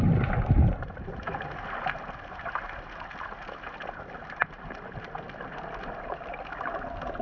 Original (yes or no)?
yes